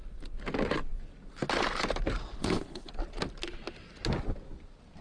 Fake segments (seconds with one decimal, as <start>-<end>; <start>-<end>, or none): 2.4-2.9